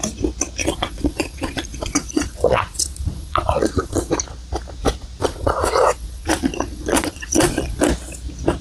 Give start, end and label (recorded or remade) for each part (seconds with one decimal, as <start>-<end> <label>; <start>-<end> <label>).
0.0-0.6 recorded; 0.6-4.1 remade; 4.1-5.2 recorded; 5.2-7.8 remade; 7.8-8.6 recorded